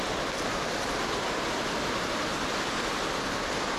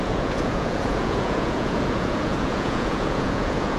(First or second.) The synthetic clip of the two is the second